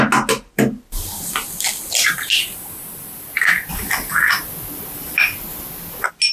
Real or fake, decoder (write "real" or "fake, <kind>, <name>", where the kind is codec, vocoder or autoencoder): real